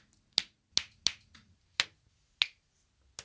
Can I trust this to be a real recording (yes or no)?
yes